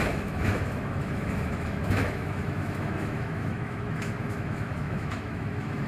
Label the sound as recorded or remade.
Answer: remade